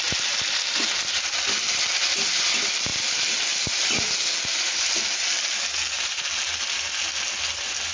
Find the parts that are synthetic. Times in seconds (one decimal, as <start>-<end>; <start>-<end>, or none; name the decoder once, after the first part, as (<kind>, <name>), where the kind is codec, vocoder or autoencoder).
none